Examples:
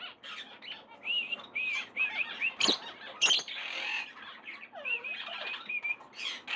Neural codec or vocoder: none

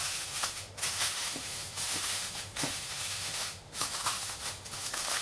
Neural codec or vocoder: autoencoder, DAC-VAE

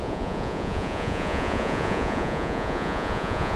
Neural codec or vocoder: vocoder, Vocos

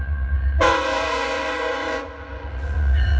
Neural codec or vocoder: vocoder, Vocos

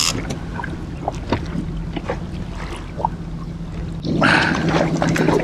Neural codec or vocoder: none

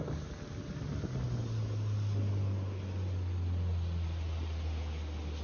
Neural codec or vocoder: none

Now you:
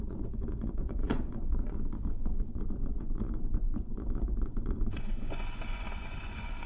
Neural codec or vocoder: vocoder, Vocos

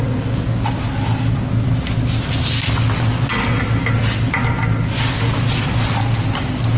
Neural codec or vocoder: none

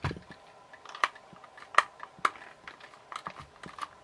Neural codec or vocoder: none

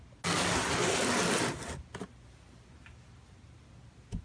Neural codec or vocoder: none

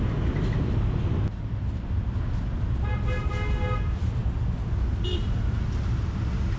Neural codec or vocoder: none